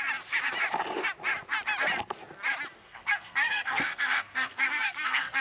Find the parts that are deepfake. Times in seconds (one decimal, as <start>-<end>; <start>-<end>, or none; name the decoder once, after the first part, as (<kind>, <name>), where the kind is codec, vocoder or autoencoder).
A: 2.8-5.4 (codec, SNAC)